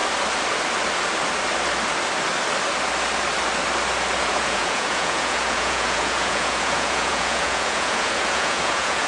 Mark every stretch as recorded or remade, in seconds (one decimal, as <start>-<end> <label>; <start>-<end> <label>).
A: 0.0-4.2 recorded; 4.2-9.1 remade